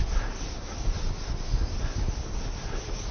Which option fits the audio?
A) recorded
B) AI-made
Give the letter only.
A